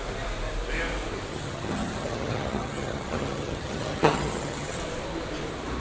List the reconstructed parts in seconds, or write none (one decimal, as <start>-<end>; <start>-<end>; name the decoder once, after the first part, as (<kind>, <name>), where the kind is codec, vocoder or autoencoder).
1.3-4.8 (vocoder, HiFi-GAN)